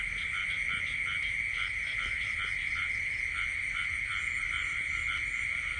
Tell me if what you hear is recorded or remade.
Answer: recorded